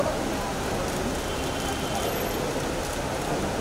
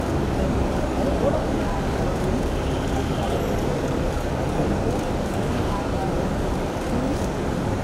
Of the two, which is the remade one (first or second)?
second